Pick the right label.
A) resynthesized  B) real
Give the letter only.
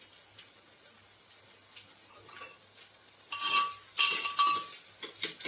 B